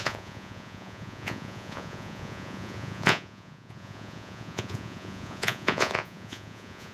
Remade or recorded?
remade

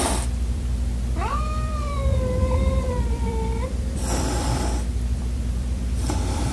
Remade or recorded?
remade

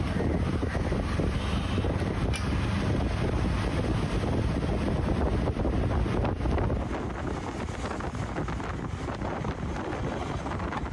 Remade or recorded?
recorded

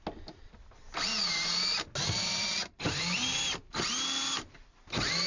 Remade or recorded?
recorded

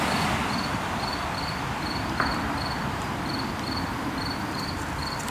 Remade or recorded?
remade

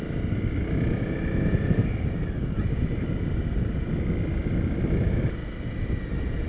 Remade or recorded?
recorded